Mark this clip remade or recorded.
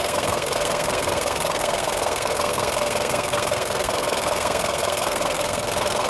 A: remade